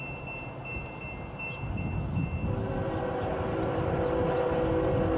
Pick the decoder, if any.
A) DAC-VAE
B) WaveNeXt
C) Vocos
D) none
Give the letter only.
D